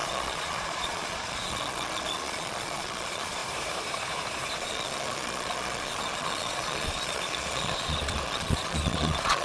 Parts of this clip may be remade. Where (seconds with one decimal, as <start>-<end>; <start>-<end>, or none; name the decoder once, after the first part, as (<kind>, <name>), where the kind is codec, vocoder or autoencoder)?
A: 0.0-3.4 (vocoder, Vocos); 4.5-9.4